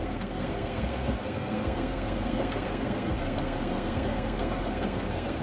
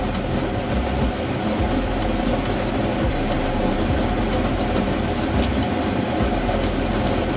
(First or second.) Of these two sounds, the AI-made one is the first